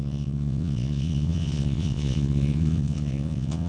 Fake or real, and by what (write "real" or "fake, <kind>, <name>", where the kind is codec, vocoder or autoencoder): fake, vocoder, Vocos